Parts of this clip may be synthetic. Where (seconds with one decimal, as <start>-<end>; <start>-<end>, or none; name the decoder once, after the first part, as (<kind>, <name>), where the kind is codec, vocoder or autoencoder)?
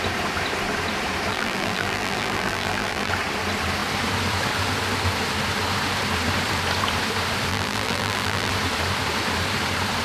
1.3-3.1 (vocoder, BigVGAN v2); 7.5-8.5